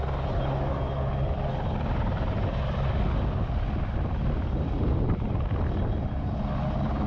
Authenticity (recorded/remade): recorded